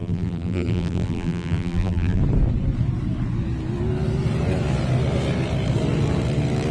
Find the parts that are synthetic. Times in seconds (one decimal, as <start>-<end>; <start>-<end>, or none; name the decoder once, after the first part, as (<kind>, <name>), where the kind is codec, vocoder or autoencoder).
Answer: 0.0-2.2 (vocoder, BigVGAN v2)